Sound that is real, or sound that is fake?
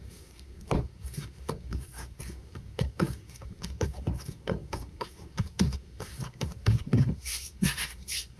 fake